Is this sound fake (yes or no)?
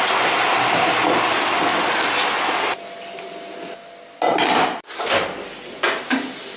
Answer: no